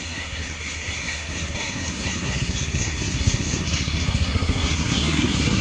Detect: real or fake fake